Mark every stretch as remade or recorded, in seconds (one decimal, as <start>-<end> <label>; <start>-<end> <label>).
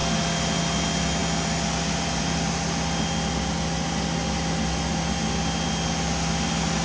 0.0-6.8 recorded